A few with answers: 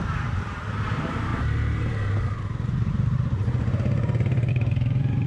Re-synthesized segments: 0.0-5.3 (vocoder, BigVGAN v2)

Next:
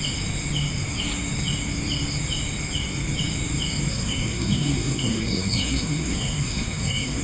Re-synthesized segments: 3.9-7.2 (codec, SNAC)